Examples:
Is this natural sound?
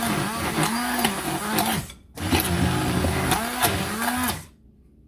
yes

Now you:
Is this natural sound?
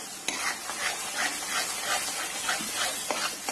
yes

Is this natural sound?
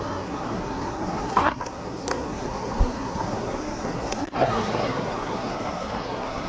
no